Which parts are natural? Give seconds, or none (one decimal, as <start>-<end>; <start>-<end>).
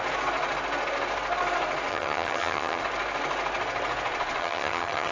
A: 0.0-1.9; 2.8-4.4